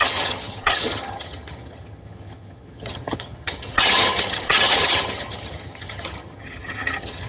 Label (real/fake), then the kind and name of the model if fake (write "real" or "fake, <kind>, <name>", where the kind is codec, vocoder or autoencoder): fake, vocoder, HiFi-GAN